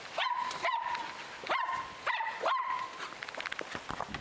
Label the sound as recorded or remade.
recorded